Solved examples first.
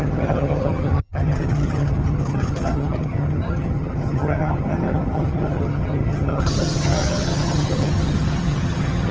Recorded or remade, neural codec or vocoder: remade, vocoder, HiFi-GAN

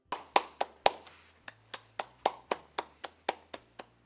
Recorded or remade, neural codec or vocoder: recorded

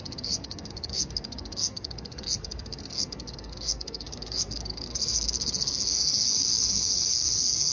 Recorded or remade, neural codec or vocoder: remade, codec, SNAC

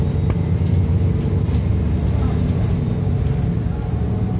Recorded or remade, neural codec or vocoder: recorded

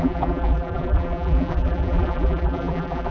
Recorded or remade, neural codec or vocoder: remade, vocoder, BigVGAN v2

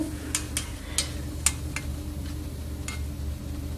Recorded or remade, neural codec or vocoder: recorded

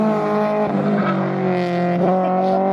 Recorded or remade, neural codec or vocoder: recorded